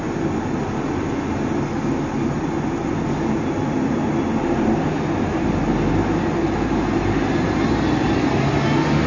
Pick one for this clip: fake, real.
real